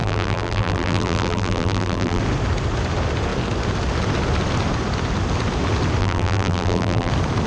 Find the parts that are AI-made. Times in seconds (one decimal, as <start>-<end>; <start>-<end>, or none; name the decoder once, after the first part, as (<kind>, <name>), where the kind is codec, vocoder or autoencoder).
0.0-2.2 (vocoder, BigVGAN v2); 6.0-7.1